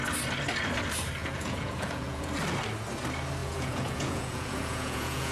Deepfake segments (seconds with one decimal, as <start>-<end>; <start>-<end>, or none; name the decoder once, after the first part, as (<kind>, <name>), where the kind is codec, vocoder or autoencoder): 1.2-2.3 (vocoder, Vocos); 3.4-5.3